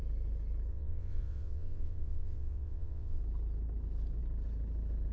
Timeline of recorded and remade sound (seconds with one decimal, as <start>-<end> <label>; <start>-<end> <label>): 0.0-0.7 recorded; 0.7-3.2 remade; 3.2-5.1 recorded